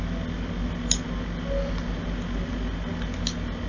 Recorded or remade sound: recorded